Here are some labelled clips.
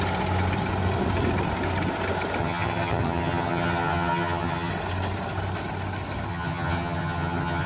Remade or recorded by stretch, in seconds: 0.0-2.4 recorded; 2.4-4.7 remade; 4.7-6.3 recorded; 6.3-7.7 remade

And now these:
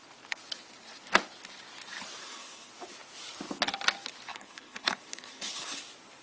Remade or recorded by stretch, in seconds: 0.0-2.2 recorded; 2.2-2.7 remade; 2.7-4.3 recorded; 4.3-5.8 remade; 5.8-6.2 recorded

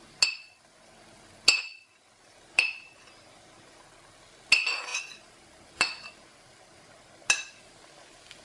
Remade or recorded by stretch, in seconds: 0.0-8.4 recorded